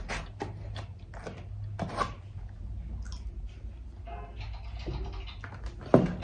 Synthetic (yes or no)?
no